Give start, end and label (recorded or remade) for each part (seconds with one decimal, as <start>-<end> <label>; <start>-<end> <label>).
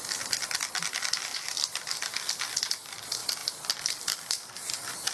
0.0-3.4 recorded; 3.4-4.6 remade; 4.6-5.1 recorded